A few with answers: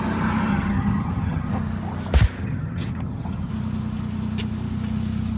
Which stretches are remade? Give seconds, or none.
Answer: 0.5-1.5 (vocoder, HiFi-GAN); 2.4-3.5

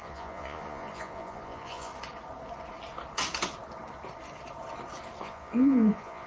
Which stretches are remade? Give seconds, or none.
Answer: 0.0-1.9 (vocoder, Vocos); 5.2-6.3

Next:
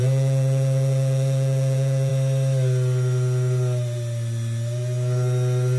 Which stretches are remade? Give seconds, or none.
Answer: 0.0-2.1 (vocoder, Vocos)

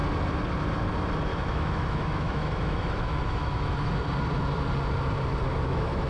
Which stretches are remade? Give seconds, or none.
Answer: 1.3-3.9 (autoencoder, DAC-VAE); 5.5-6.1